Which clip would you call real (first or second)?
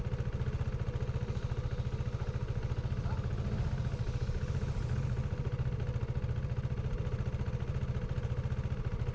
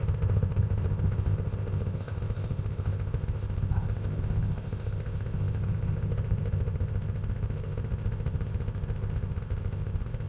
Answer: first